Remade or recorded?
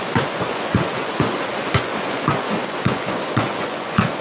remade